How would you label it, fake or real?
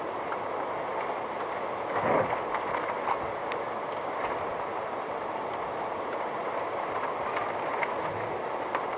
real